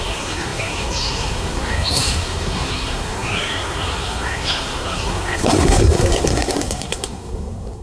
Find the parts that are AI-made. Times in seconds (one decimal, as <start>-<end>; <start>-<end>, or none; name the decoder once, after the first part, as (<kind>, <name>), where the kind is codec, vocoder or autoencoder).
0.0-7.8 (codec, SNAC)